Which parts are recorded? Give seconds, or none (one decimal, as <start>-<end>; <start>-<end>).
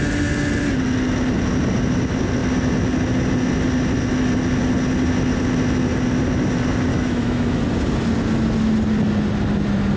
0.0-6.9; 7.6-10.0